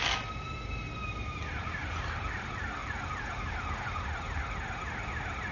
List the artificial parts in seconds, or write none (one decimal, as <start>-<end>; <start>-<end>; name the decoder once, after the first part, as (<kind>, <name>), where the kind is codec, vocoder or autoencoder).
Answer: 1.7-2.3 (vocoder, BigVGAN v2); 2.8-4.4